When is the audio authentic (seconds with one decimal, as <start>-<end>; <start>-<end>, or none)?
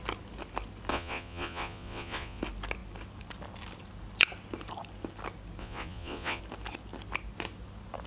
0.0-0.9; 2.4-5.6; 6.4-8.1